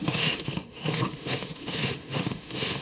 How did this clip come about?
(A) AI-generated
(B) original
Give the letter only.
A